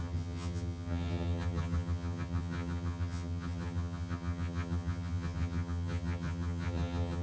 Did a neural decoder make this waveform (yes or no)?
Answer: yes